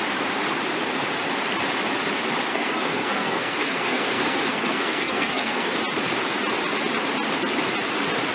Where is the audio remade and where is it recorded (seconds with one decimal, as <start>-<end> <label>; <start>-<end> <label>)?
0.0-2.5 recorded; 2.5-5.7 remade; 5.7-8.3 recorded